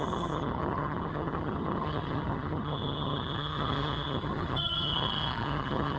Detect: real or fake fake